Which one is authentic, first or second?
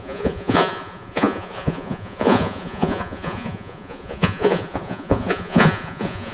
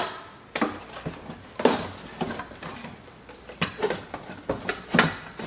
second